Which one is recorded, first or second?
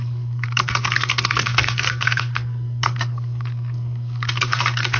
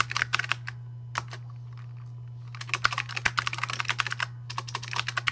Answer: second